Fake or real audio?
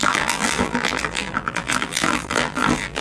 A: fake